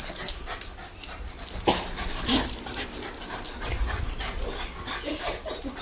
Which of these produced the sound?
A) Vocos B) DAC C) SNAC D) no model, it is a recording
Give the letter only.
D